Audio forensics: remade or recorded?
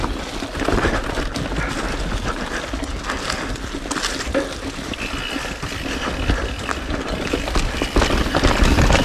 recorded